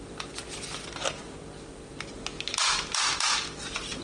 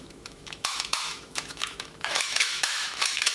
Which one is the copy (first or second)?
second